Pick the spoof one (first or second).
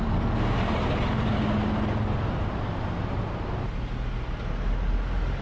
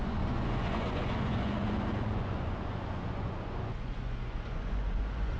second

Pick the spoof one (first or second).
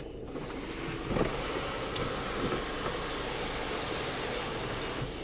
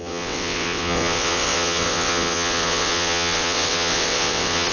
second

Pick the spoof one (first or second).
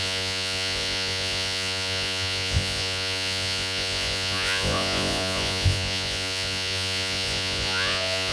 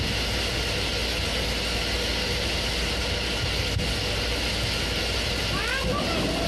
first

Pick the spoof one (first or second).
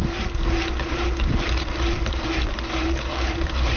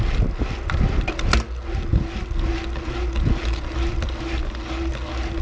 first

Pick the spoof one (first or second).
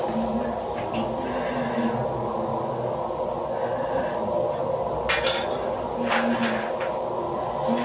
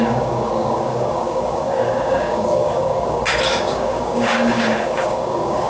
second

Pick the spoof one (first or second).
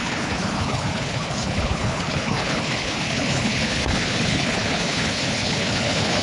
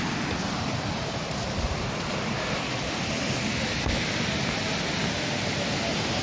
first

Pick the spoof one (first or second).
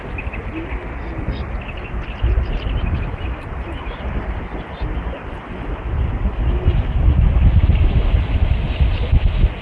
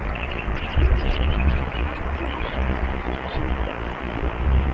second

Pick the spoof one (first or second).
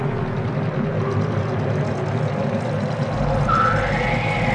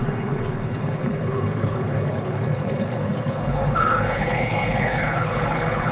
second